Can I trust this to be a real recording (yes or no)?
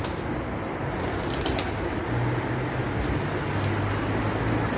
yes